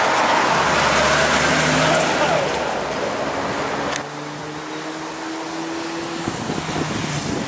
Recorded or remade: recorded